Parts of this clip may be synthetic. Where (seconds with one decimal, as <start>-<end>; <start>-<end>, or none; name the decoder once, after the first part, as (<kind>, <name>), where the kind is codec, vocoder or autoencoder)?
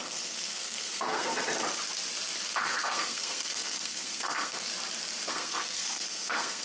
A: 0.0-1.3 (codec, SNAC); 2.6-4.7; 5.3-6.6